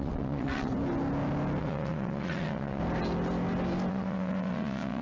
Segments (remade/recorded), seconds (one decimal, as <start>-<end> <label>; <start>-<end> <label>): 0.0-0.7 remade; 0.7-1.6 recorded; 1.6-2.8 remade; 2.8-3.9 recorded; 3.9-5.0 remade